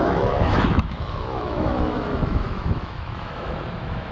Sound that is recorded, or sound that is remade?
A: remade